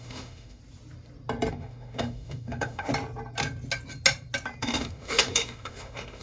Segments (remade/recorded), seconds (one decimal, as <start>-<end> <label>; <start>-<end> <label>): 0.0-0.6 remade; 0.6-1.5 recorded; 1.5-2.9 remade; 2.9-4.6 recorded; 4.6-6.2 remade

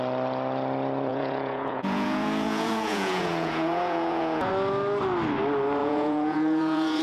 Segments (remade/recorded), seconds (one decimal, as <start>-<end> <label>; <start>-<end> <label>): 0.0-1.1 recorded; 1.1-4.5 remade; 4.5-5.8 recorded; 5.8-7.0 remade